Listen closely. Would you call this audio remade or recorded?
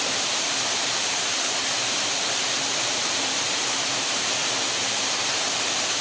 remade